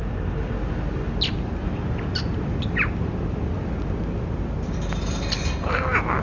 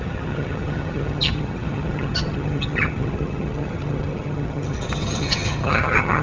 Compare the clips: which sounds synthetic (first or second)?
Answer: second